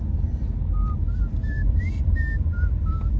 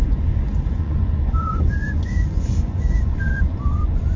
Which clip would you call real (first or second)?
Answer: first